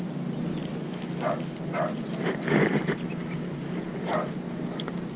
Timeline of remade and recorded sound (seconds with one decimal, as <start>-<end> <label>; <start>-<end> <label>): 0.0-5.2 recorded